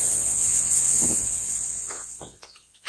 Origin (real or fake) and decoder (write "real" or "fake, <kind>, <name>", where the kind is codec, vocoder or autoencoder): fake, vocoder, WaveNeXt